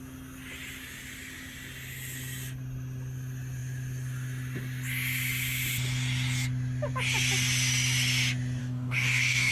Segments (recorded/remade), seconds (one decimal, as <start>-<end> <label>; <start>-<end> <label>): 0.0-8.6 recorded; 8.6-9.5 remade